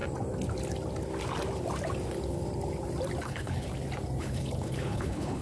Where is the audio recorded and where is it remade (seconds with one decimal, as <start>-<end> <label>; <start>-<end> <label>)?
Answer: 0.0-3.2 recorded; 3.2-3.7 remade; 3.7-4.2 recorded; 4.2-5.4 remade